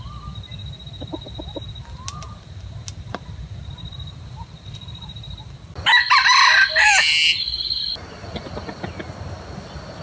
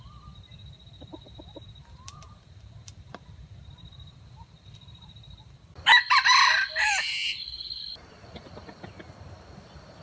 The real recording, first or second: first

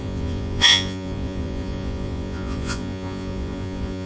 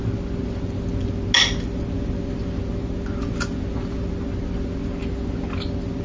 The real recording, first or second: second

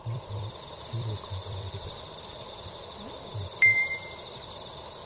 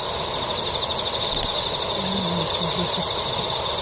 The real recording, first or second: second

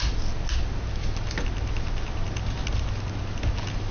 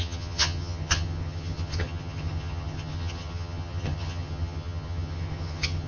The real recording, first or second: first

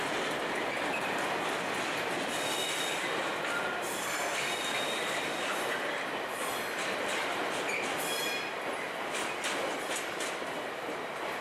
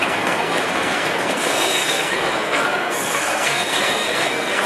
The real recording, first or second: first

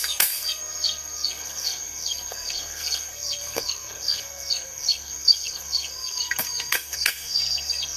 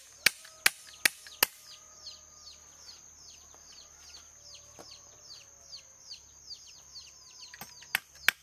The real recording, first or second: second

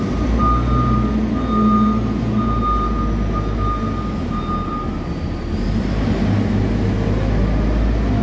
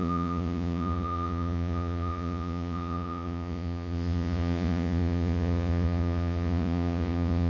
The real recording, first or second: first